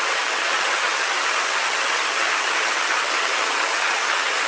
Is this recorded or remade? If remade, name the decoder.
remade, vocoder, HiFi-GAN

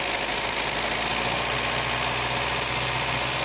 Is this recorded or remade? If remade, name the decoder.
recorded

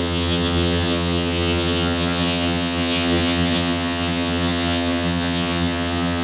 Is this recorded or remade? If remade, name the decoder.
remade, vocoder, HiFi-GAN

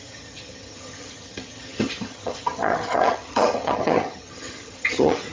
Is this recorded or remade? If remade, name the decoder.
remade, vocoder, HiFi-GAN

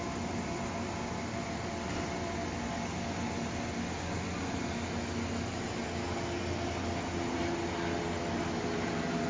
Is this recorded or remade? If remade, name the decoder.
recorded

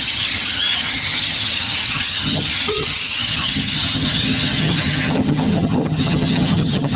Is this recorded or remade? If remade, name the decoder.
remade, vocoder, HiFi-GAN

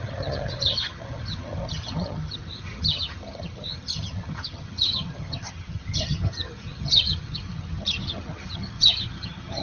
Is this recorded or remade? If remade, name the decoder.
remade, vocoder, HiFi-GAN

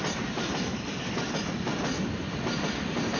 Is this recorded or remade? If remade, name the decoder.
recorded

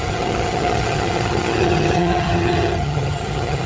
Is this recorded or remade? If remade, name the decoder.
remade, vocoder, HiFi-GAN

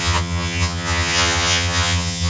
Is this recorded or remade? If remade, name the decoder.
remade, vocoder, HiFi-GAN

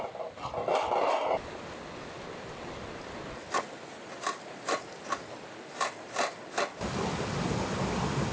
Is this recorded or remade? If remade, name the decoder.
recorded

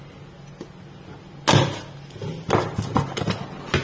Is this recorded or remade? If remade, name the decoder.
recorded